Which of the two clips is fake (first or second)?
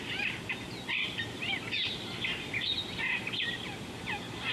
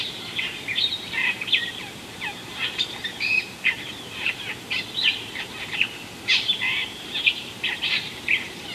second